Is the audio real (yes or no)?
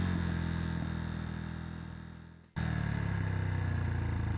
yes